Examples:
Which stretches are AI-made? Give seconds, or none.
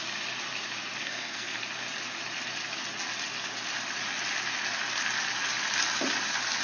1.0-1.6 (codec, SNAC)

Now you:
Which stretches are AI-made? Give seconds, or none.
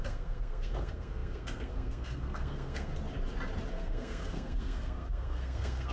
0.0-2.9 (codec, SNAC); 3.7-5.9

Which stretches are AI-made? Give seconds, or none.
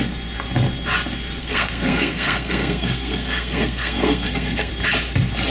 1.4-4.7 (codec, SNAC)